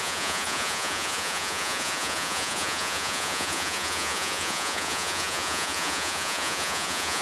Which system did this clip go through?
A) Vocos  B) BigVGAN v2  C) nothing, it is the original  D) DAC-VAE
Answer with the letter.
A